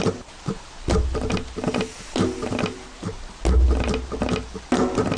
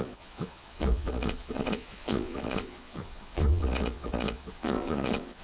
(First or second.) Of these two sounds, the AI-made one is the second